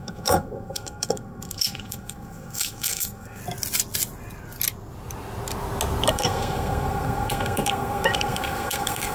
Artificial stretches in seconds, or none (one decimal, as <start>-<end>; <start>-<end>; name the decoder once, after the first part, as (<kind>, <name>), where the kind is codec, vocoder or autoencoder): 0.0-3.4 (codec, SNAC); 6.1-9.1

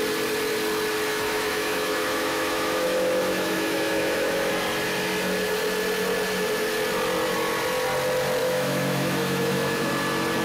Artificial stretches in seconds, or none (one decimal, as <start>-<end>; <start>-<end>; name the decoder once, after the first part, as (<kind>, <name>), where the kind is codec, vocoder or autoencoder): 1.1-4.5 (autoencoder, DAC-VAE); 8.4-9.9

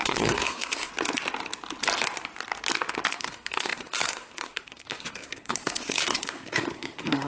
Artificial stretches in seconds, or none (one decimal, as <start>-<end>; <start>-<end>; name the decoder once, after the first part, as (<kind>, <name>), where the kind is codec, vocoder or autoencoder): 0.0-0.9 (codec, SNAC); 3.1-7.3

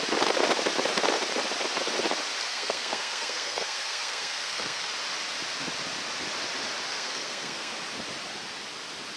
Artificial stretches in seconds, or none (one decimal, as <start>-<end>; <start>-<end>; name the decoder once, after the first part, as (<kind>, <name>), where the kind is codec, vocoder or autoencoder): 2.5-4.9 (codec, SNAC); 6.9-7.7

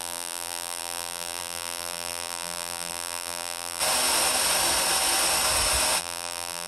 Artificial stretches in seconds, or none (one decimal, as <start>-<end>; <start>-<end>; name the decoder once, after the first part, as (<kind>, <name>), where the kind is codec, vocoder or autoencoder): 0.0-3.8 (vocoder, BigVGAN v2); 6.0-6.7

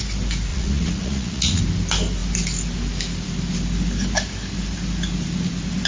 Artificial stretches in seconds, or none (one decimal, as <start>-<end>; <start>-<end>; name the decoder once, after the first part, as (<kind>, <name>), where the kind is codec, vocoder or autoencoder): 0.5-1.6 (vocoder, Vocos)

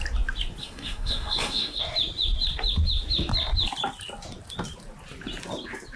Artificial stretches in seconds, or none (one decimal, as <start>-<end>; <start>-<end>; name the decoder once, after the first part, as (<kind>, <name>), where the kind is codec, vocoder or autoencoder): 0.6-1.8 (codec, SNAC)

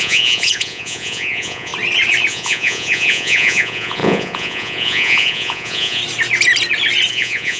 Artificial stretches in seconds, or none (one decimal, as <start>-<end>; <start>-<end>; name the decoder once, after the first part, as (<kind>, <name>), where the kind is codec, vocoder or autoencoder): 0.0-1.7 (vocoder, Vocos); 2.3-6.0; 7.1-7.6